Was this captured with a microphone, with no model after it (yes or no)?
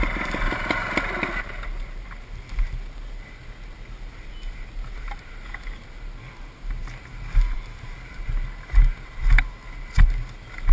yes